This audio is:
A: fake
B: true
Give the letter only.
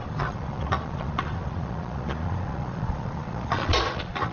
A